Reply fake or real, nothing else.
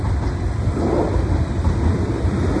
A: fake